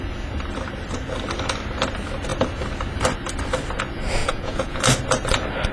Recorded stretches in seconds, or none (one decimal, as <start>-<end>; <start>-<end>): 0.0-4.2; 4.8-5.7